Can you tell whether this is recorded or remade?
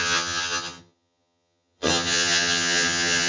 remade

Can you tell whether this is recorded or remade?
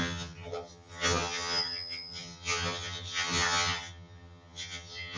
remade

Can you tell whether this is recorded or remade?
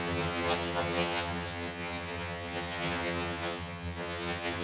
remade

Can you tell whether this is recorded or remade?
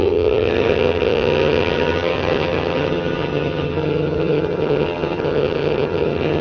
remade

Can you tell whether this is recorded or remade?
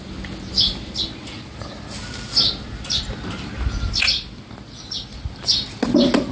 recorded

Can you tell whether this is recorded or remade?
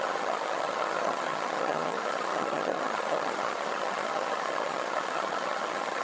remade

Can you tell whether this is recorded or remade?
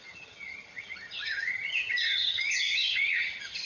remade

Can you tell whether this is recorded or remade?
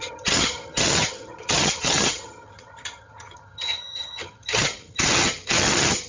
remade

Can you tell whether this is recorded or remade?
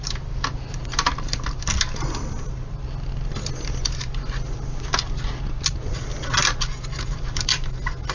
recorded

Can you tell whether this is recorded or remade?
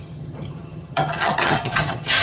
remade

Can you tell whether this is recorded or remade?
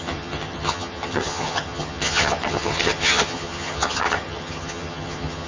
remade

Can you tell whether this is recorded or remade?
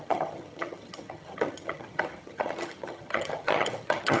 remade